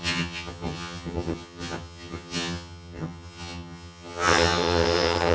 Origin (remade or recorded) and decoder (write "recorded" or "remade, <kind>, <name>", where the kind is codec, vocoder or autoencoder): remade, vocoder, HiFi-GAN